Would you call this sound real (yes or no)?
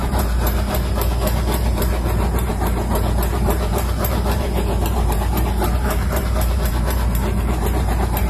no